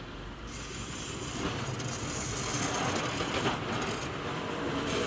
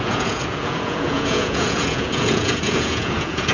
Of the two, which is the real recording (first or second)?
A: first